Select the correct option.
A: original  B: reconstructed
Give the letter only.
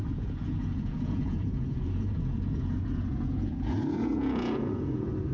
B